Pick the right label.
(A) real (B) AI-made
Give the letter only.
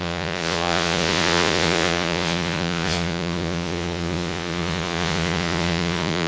B